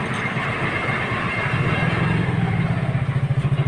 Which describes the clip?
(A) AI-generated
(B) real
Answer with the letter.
B